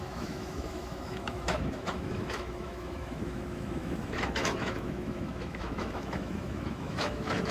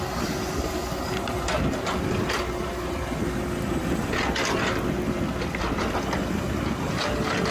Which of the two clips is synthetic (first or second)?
first